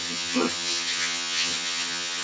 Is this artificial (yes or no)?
yes